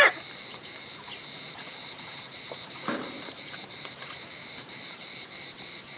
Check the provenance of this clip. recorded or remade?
remade